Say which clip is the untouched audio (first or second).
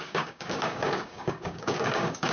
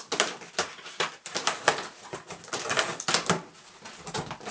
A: second